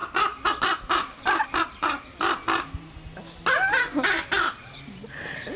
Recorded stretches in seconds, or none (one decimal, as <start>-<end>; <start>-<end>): 0.0-5.6